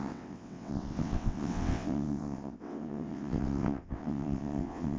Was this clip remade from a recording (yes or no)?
yes